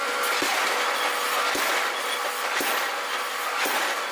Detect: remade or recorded recorded